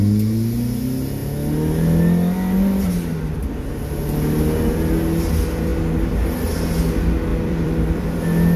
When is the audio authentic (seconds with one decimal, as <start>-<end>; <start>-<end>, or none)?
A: 0.0-7.3; 8.2-8.6